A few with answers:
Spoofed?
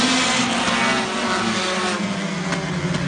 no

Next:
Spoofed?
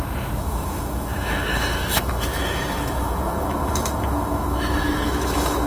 yes